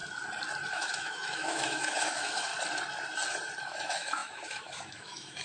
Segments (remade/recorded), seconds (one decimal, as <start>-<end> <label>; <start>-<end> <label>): 0.0-0.7 recorded; 0.7-2.5 remade; 2.5-3.6 recorded; 3.6-5.4 remade